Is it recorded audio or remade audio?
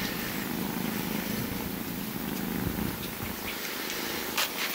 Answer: recorded